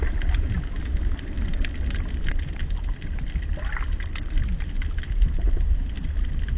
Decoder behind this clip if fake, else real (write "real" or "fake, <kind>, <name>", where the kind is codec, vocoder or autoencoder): real